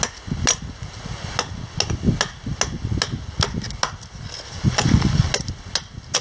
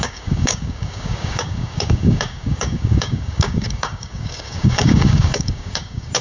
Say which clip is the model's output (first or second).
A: second